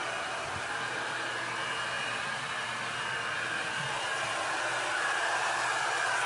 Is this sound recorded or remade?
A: recorded